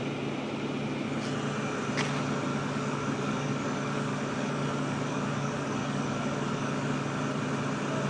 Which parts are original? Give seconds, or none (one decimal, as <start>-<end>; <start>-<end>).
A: 0.0-2.5; 7.4-8.1